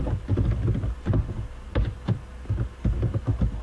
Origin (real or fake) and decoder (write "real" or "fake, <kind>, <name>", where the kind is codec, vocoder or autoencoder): real